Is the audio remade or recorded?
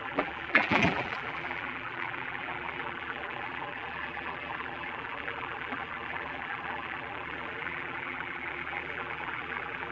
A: remade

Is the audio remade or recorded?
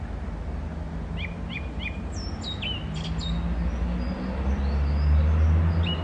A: recorded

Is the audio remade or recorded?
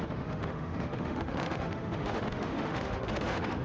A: remade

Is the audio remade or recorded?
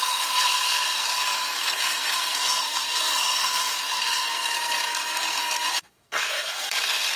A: remade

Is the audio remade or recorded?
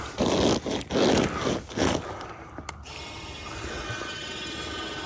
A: recorded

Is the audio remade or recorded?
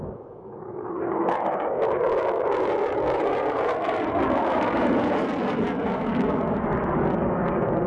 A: remade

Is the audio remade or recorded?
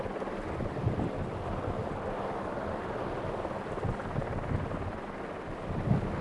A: recorded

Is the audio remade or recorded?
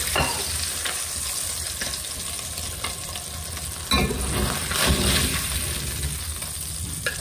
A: recorded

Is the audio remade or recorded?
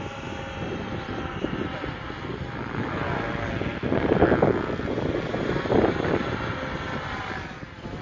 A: recorded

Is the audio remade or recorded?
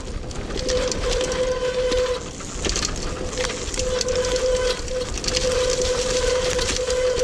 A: recorded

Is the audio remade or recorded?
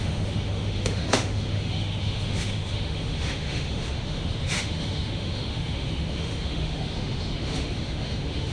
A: remade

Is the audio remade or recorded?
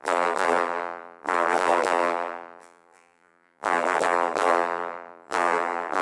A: remade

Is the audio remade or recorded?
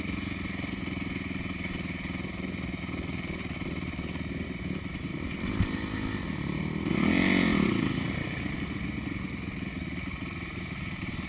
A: recorded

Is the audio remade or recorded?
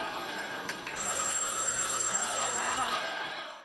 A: remade